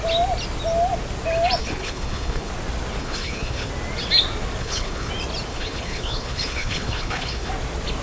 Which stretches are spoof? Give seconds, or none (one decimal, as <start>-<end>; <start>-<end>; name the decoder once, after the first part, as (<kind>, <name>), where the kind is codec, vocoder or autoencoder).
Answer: 1.6-2.5 (codec, HILCodec); 3.0-3.7; 4.6-5.1; 5.5-7.5